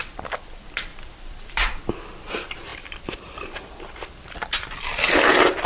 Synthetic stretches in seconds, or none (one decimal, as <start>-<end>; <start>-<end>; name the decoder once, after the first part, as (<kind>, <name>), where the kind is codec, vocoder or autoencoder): 0.9-1.9 (vocoder, BigVGAN v2); 2.7-4.1